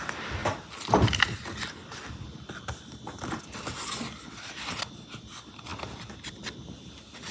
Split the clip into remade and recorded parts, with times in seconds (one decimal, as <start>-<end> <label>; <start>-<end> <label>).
0.0-7.3 recorded